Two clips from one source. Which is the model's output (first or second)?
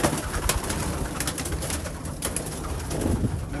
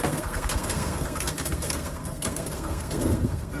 second